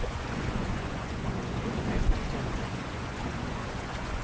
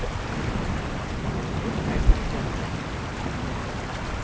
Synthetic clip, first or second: first